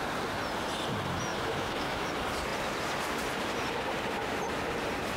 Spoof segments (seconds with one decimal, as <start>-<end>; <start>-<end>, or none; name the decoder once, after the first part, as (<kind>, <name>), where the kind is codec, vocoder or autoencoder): 1.3-2.1 (autoencoder, DAC-VAE)